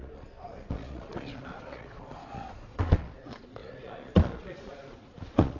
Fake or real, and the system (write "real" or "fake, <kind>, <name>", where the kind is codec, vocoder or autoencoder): fake, vocoder, Vocos